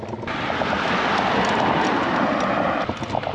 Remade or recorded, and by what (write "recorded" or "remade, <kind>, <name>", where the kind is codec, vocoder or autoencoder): recorded